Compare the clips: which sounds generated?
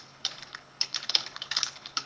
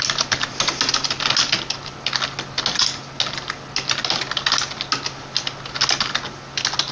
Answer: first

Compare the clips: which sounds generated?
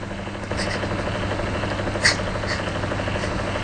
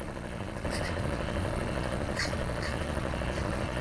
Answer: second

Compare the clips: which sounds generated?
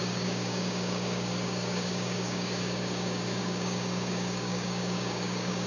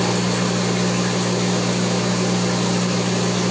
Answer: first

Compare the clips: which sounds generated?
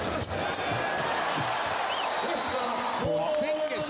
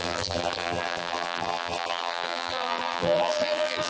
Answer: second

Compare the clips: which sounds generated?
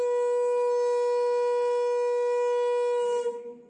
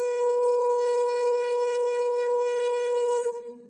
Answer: second